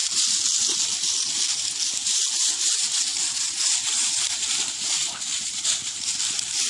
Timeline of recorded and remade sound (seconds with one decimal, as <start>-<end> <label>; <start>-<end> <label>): 0.0-2.0 recorded; 2.0-6.0 remade; 6.0-6.7 recorded